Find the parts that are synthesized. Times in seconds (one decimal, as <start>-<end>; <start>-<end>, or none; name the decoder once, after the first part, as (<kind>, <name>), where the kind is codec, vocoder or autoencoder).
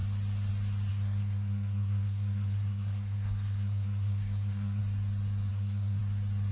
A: 0.9-4.8 (codec, SNAC); 5.5-6.0